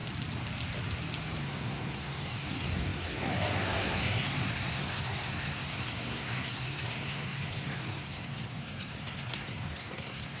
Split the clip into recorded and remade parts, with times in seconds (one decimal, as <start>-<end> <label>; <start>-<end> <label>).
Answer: 0.0-1.4 recorded; 1.4-10.4 remade